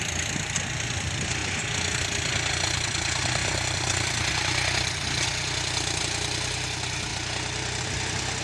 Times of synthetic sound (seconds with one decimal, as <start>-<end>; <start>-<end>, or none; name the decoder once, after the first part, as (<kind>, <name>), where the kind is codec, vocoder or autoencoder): none